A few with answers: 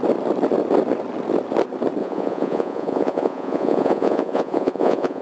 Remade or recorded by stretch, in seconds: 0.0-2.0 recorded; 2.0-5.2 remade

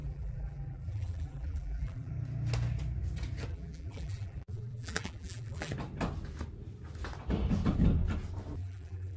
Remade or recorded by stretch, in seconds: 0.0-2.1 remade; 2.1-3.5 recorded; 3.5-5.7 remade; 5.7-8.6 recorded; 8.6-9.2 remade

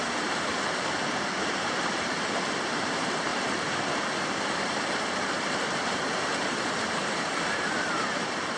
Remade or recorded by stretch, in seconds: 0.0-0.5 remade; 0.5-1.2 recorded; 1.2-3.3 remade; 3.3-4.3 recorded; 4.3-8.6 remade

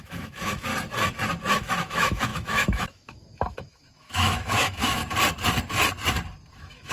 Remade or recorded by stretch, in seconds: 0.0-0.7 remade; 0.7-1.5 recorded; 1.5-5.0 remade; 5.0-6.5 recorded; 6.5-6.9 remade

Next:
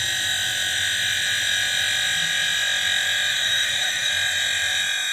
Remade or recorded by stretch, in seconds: 0.0-3.3 recorded; 3.3-4.1 remade; 4.1-5.1 recorded